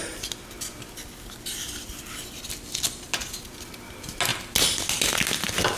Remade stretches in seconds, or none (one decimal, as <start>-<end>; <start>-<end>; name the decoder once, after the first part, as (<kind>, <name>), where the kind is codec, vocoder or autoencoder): none